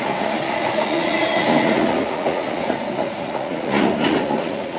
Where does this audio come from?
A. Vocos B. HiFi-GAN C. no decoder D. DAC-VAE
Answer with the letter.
A